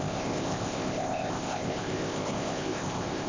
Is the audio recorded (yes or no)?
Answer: no